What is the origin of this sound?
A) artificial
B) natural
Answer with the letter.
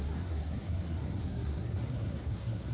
A